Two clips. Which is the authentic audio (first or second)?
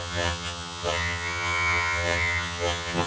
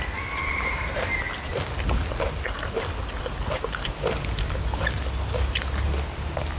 second